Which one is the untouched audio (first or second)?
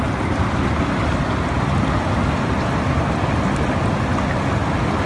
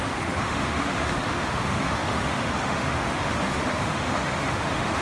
first